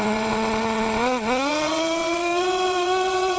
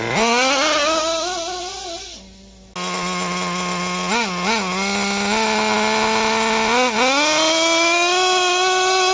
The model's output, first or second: first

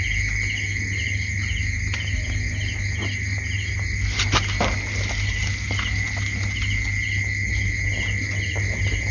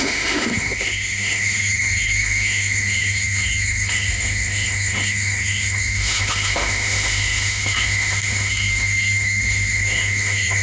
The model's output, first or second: second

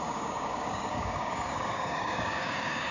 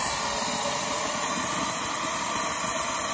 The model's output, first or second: first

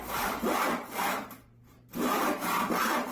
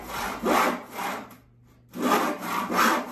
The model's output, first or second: first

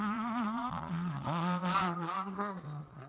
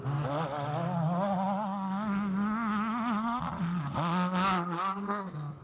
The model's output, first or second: first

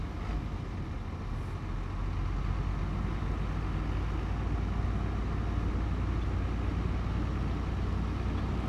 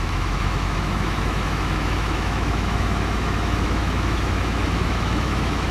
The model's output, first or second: second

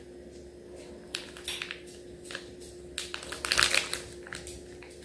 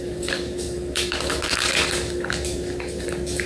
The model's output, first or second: second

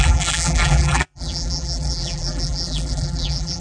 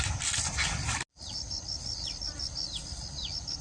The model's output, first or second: first